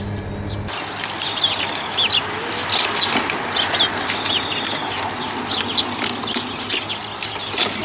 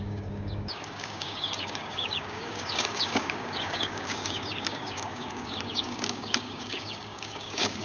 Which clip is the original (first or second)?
first